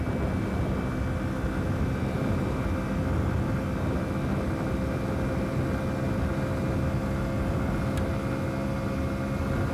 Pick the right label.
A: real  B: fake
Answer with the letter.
A